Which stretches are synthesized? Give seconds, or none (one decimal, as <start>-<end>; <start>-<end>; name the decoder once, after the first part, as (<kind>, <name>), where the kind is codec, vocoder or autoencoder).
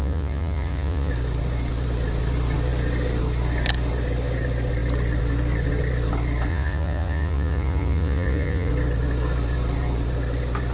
0.0-1.1 (vocoder, Vocos); 6.5-8.7